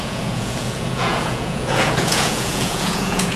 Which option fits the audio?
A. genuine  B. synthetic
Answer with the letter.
B